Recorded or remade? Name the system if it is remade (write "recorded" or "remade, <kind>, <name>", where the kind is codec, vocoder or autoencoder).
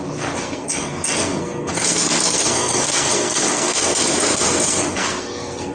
remade, codec, SNAC